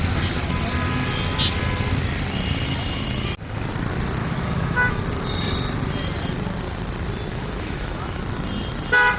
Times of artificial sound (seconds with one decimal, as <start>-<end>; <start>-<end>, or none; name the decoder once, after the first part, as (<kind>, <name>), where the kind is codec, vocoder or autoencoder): 4.2-5.0 (autoencoder, DAC-VAE); 7.3-8.2